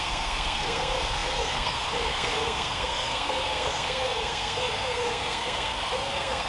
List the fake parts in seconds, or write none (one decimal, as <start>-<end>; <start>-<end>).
0.0-6.5